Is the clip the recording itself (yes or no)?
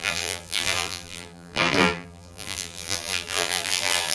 no